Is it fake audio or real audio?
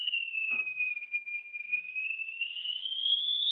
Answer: fake